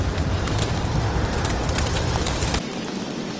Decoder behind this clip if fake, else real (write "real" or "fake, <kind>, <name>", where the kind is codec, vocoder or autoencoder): real